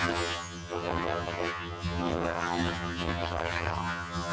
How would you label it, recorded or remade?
remade